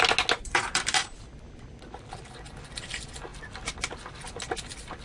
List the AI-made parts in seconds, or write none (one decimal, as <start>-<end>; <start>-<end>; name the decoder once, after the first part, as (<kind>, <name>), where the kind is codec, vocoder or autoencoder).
0.4-1.2 (vocoder, BigVGAN v2)